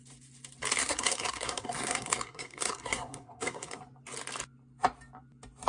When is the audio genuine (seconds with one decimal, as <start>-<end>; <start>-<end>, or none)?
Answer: 0.0-0.8; 3.8-5.7